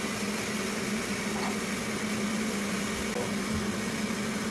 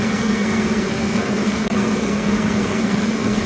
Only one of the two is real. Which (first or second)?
first